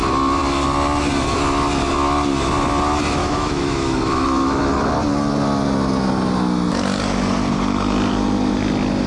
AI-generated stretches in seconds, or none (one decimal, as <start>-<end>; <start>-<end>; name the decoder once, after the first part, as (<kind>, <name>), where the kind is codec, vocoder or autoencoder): 3.2-4.6 (autoencoder, DAC-VAE)